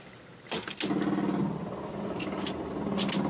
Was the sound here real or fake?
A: real